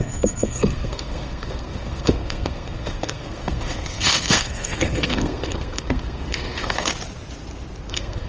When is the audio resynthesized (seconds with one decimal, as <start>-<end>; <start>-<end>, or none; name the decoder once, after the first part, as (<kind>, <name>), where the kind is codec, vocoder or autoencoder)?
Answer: 0.0-6.9 (codec, SNAC); 7.9-8.3